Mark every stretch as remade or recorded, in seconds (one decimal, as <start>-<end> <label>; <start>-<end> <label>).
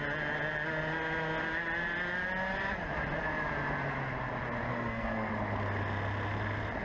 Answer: 0.0-4.7 recorded; 4.7-5.3 remade; 5.3-6.8 recorded